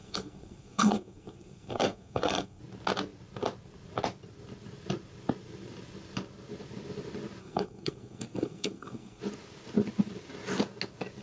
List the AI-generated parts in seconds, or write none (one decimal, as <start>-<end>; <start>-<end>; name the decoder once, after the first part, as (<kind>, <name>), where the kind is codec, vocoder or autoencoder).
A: 0.0-2.6 (codec, SNAC); 7.4-9.2